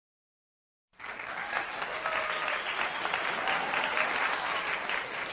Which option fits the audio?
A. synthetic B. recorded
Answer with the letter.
B